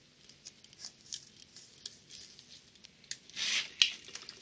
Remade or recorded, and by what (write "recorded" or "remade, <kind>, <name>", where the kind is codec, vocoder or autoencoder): recorded